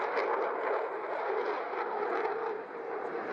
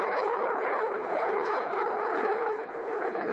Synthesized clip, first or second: second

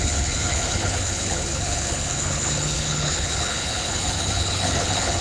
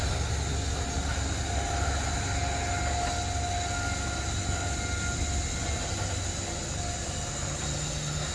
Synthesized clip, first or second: first